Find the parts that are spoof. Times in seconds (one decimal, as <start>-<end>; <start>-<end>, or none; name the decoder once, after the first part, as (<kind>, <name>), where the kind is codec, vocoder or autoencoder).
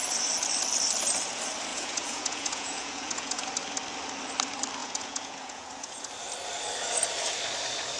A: 1.7-3.5 (vocoder, Vocos); 4.8-6.1